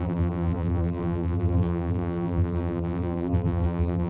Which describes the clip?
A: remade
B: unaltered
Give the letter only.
A